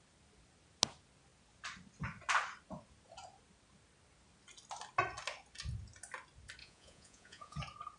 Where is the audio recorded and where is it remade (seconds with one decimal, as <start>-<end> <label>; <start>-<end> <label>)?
0.0-6.6 recorded; 6.6-7.6 remade; 7.6-8.0 recorded